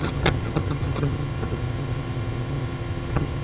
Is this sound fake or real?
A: fake